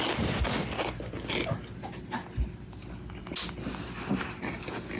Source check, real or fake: real